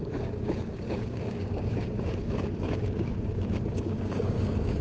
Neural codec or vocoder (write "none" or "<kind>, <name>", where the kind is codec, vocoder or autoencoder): codec, DAC